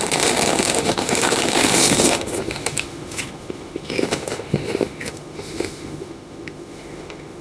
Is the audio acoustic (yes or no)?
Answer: no